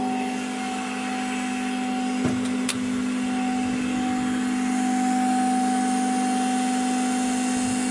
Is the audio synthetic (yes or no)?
no